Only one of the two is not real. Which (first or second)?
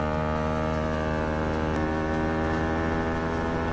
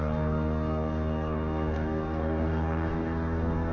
second